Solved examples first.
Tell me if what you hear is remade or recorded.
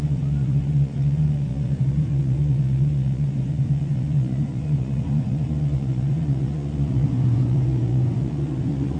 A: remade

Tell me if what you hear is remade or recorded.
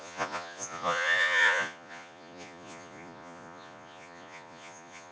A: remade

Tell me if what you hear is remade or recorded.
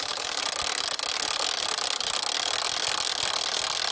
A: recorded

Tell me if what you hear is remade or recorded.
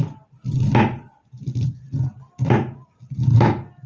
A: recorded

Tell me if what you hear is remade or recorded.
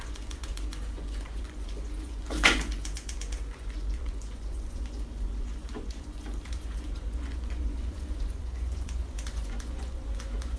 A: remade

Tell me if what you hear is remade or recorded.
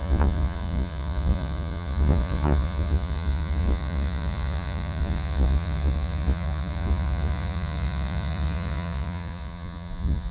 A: remade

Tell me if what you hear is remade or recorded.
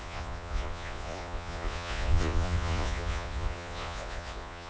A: remade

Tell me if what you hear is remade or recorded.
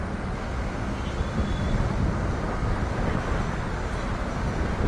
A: recorded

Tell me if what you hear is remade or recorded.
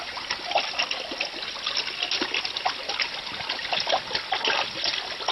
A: recorded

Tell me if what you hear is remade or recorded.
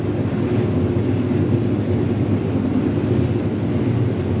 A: recorded